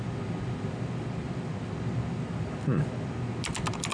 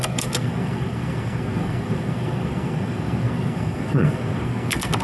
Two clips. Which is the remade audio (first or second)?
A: second